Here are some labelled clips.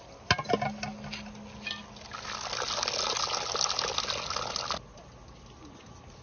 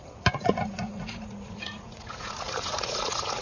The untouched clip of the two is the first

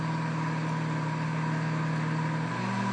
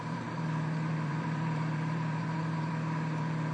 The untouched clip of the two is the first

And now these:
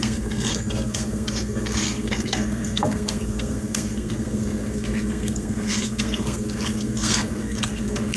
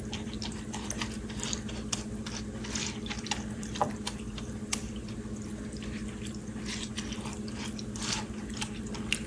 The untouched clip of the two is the second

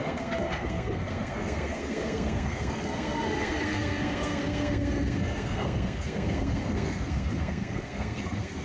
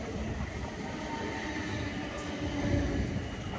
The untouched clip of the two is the second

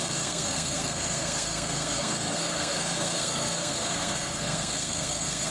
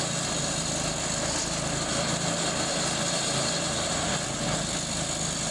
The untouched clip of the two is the second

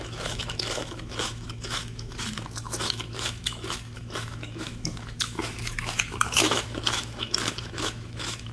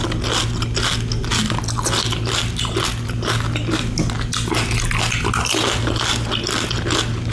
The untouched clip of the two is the second